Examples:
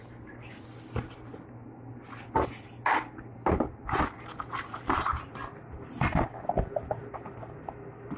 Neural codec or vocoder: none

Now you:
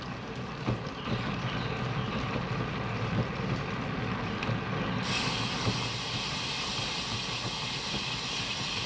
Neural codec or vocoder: none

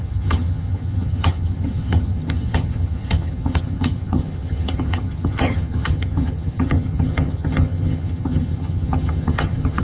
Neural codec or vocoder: vocoder, HiFi-GAN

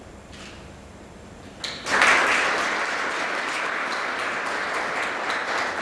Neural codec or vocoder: none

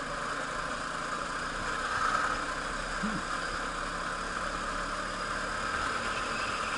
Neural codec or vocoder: none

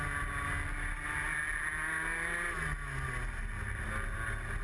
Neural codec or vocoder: none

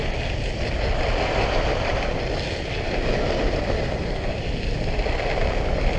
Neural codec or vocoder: none